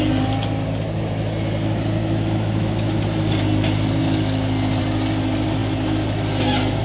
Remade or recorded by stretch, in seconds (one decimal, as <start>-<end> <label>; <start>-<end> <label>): 0.0-2.0 recorded; 2.0-3.0 remade; 3.0-6.8 recorded

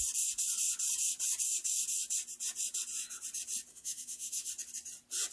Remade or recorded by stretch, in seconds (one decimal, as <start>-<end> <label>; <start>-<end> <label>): 0.0-3.7 recorded; 3.7-4.5 remade; 4.5-5.3 recorded